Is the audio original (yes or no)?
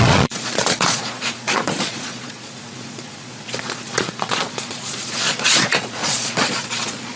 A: no